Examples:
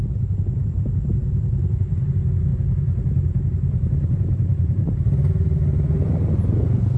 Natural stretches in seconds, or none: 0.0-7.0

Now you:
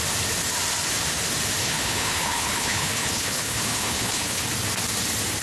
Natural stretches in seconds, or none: 0.0-1.6; 4.4-5.4